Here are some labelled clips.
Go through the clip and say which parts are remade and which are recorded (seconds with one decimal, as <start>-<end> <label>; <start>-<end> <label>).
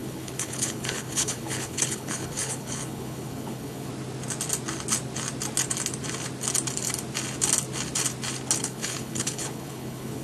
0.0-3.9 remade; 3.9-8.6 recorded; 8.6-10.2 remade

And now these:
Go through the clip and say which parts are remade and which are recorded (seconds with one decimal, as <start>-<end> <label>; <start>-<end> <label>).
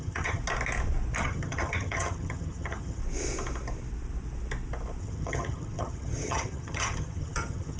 0.0-0.4 remade; 0.4-1.2 recorded; 1.2-3.0 remade; 3.0-5.0 recorded; 5.0-7.8 remade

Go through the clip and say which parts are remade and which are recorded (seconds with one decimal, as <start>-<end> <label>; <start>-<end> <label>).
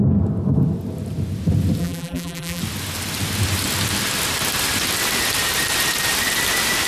0.0-1.8 recorded; 1.8-2.6 remade; 2.6-6.9 recorded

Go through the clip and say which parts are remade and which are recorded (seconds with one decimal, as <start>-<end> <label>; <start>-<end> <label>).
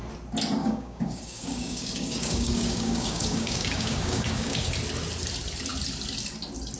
0.0-0.6 recorded; 0.6-4.7 remade; 4.7-6.8 recorded